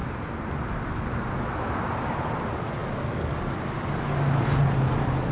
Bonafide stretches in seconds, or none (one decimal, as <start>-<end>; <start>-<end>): 0.0-5.3